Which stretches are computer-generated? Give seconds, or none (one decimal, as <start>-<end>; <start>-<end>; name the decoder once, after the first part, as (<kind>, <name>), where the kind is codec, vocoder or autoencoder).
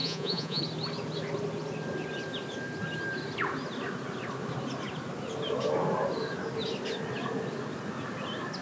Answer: 0.0-0.6 (vocoder, Vocos)